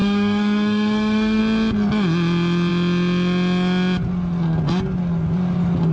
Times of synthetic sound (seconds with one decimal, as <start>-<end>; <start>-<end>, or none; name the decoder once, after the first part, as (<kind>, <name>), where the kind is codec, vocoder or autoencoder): 0.0-1.4 (codec, SNAC)

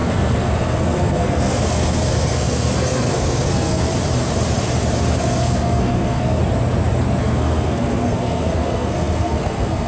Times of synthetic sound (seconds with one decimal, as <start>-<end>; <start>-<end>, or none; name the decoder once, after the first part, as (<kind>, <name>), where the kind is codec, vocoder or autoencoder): 0.0-3.9 (codec, SNAC); 5.2-6.4; 7.2-9.9

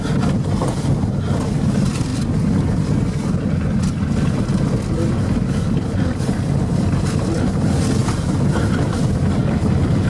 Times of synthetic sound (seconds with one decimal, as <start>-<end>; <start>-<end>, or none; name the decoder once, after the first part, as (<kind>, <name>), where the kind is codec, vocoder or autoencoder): none